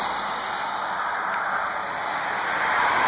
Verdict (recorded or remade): recorded